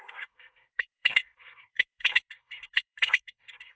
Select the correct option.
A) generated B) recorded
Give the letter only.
A